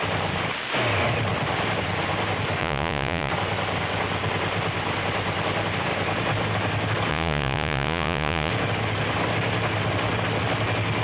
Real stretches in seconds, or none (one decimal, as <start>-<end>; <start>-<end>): 0.0-2.6; 3.3-7.1; 8.5-11.0